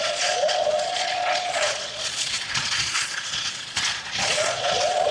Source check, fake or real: fake